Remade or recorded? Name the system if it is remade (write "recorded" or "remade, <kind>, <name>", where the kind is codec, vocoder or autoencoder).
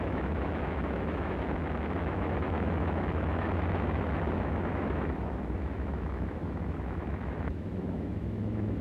remade, autoencoder, DAC-VAE